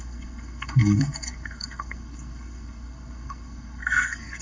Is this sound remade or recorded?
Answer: remade